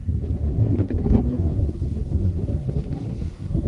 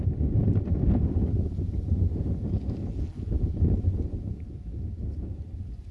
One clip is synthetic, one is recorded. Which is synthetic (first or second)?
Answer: first